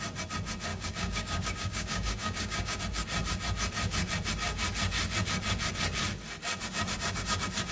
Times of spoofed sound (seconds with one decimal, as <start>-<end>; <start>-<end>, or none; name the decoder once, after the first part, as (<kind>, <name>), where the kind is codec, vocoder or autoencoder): 0.7-2.8 (codec, DAC)